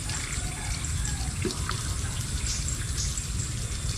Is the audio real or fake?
real